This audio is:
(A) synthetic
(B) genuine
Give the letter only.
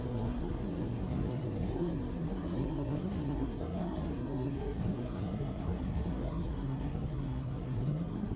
A